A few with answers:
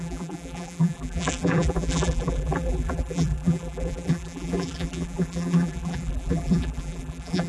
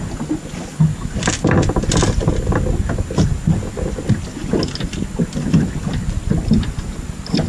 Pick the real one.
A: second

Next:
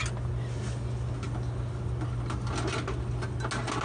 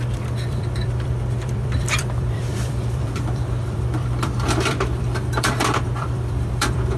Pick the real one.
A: first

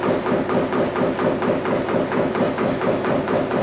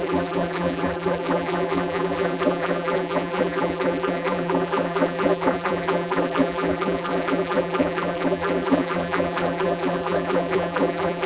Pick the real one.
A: first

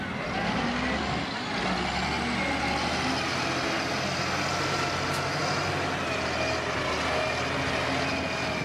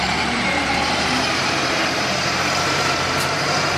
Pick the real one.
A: first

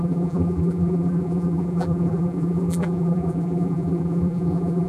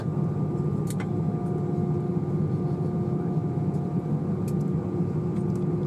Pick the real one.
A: second